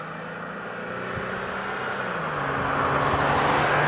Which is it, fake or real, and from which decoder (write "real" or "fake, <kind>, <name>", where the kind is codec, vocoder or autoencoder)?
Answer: real